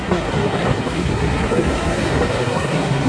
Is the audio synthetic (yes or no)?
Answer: yes